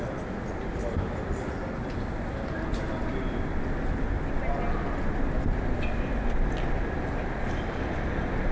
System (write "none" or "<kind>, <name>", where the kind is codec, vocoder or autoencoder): none